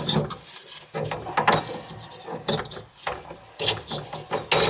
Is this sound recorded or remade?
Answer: recorded